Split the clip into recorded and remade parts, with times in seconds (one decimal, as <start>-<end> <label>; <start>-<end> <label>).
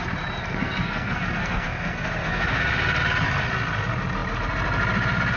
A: 0.0-0.4 recorded; 0.4-2.6 remade; 2.6-5.4 recorded